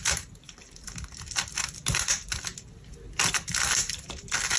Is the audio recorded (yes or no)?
yes